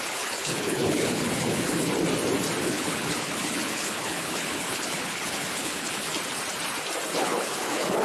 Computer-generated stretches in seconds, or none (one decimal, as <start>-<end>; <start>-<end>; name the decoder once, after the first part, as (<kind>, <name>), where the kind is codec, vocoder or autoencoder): 0.0-1.9 (codec, HILCodec); 2.6-6.1; 7.1-8.0